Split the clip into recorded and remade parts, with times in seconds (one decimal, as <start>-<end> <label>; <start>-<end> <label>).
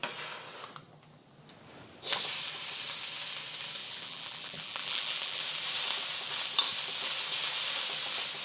0.0-3.8 recorded; 3.8-5.4 remade; 5.4-8.4 recorded